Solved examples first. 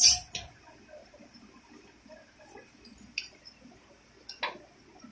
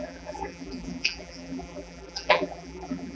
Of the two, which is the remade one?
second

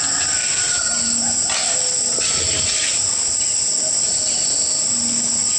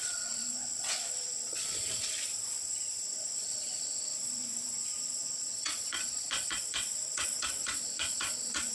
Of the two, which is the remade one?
second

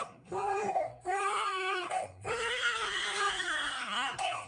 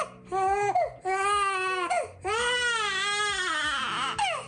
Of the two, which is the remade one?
first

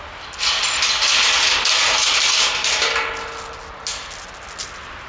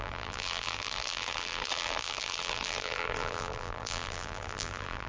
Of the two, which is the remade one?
second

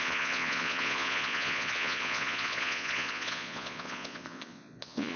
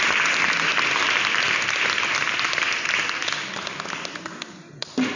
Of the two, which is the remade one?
first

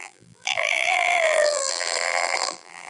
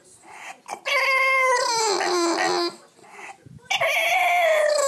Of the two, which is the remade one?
first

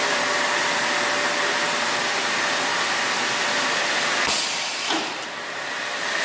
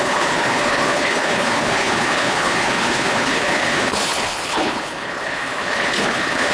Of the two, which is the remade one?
second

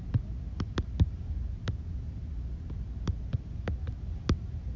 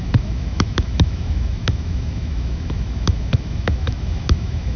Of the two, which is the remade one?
second